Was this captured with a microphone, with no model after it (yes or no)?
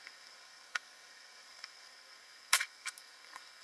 no